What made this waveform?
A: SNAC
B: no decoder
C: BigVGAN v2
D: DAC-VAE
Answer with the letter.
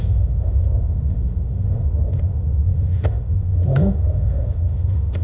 D